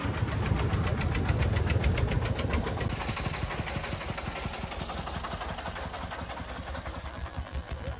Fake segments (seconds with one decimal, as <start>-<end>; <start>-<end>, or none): 7.1-8.0